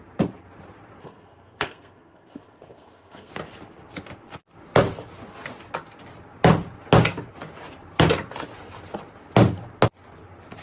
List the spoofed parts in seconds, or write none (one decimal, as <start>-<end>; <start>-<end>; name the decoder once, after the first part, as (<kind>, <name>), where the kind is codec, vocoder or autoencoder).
1.0-3.3 (codec, SNAC)